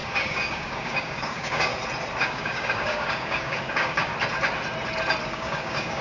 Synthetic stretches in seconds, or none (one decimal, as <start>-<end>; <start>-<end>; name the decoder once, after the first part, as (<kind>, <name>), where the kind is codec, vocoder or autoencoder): 0.0-1.7 (codec, DAC); 2.2-4.1; 5.3-6.0

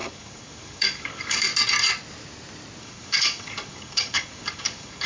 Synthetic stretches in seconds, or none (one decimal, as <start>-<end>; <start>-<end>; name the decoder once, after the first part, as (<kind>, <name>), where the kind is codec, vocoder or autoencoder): 0.0-1.5 (codec, DAC); 2.8-5.1